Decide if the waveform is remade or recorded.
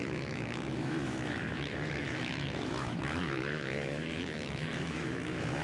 remade